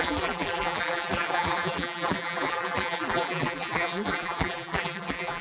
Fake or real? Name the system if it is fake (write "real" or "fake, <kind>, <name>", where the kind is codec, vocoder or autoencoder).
fake, vocoder, BigVGAN v2